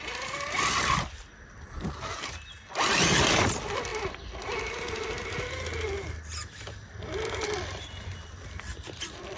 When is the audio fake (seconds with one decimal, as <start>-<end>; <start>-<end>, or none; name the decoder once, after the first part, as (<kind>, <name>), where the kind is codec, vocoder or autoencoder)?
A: none